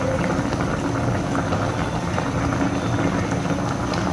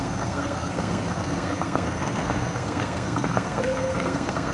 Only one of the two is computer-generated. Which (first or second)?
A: second